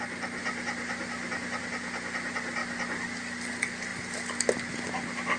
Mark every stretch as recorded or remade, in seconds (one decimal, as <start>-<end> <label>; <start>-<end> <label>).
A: 0.0-5.4 recorded